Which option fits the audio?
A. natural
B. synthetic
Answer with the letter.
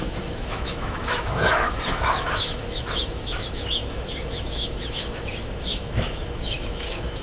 B